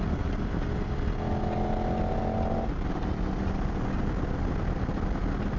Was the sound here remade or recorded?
recorded